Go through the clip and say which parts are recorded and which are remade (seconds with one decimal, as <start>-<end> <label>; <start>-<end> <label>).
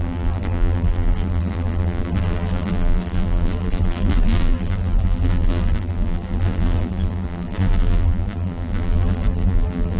0.0-10.0 remade